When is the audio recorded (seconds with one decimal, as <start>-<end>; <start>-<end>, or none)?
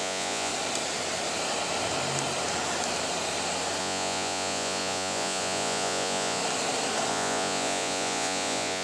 0.5-3.8; 6.4-7.1